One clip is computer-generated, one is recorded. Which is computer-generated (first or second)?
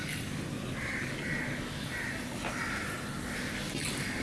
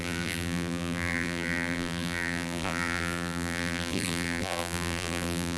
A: second